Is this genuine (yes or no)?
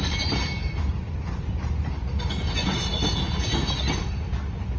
yes